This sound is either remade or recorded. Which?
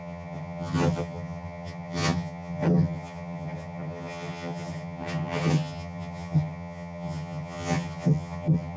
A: remade